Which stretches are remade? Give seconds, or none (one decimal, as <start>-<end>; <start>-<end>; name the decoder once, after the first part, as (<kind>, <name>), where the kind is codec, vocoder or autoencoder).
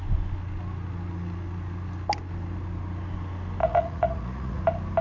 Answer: 3.6-4.6 (vocoder, Vocos)